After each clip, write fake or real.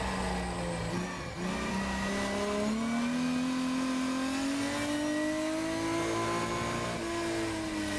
real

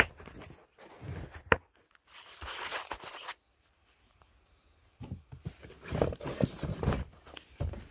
real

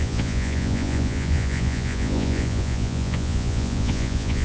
fake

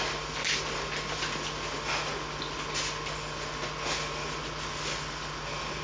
real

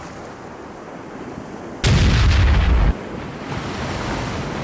real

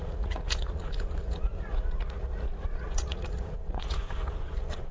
fake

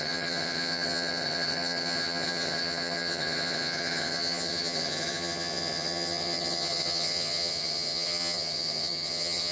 fake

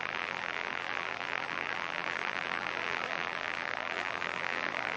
fake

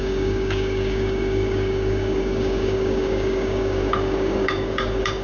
fake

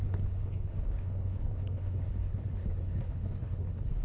fake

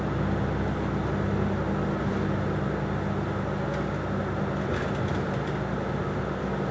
real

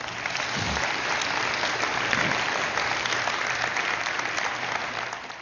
real